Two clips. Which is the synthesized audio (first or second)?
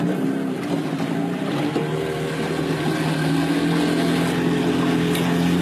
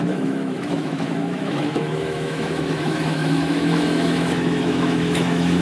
second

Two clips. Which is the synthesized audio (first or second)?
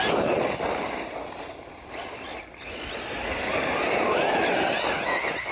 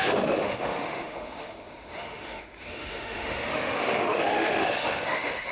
second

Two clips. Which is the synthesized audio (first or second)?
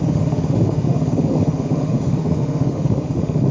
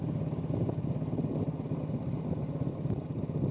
first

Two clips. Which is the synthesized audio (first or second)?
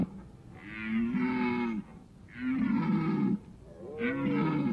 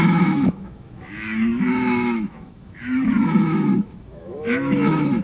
second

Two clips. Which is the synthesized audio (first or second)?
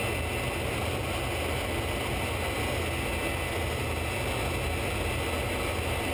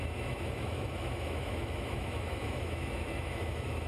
second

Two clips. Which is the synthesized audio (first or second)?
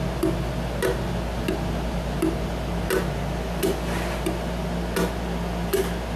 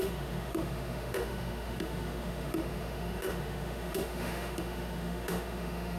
second